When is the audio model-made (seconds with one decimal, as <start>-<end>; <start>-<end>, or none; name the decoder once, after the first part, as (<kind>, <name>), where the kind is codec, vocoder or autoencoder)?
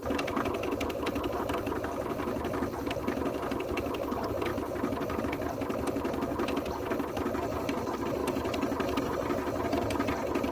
8.2-9.0 (vocoder, BigVGAN v2)